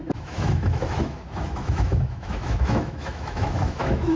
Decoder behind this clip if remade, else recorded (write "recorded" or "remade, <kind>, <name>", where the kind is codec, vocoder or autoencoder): remade, autoencoder, DAC-VAE